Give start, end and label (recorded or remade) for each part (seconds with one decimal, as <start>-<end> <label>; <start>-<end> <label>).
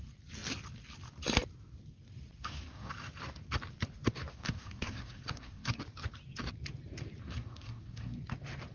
0.0-2.4 recorded; 2.4-2.9 remade; 2.9-4.3 recorded; 4.3-5.8 remade; 5.8-7.2 recorded; 7.2-8.2 remade; 8.2-8.7 recorded